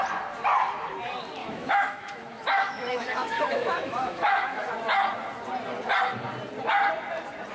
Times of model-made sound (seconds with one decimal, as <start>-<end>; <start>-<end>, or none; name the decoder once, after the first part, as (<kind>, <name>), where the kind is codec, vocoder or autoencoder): 1.4-4.7 (autoencoder, DAC-VAE)